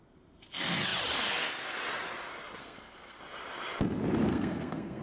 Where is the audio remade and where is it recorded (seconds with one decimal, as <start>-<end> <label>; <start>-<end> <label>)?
0.0-2.6 recorded; 2.6-3.2 remade; 3.2-4.3 recorded; 4.3-5.0 remade